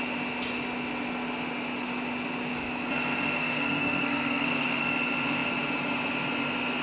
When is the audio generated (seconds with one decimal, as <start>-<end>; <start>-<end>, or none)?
3.4-4.8